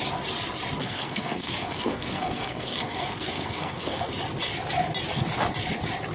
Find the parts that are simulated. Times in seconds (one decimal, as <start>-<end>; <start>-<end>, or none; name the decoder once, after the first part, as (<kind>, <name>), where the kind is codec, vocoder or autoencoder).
0.8-4.1 (codec, SNAC)